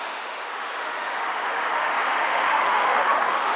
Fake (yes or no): yes